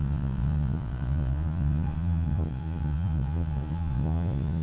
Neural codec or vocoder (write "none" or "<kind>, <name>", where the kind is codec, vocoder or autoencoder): vocoder, Vocos